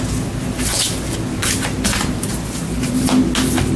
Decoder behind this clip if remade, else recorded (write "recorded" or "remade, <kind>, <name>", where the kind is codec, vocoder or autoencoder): recorded